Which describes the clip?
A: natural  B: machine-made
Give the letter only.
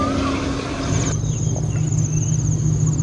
A